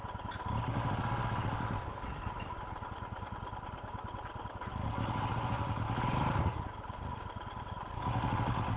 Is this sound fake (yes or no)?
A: no